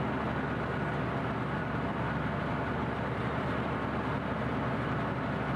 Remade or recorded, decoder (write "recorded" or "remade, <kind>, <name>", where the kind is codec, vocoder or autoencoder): recorded